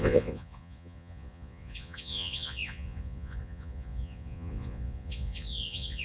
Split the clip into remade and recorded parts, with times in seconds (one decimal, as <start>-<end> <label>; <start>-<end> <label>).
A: 0.0-6.0 remade